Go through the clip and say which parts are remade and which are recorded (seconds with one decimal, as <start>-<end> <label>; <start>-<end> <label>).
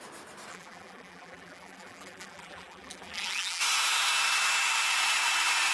0.0-0.5 recorded; 0.5-3.6 remade; 3.6-5.7 recorded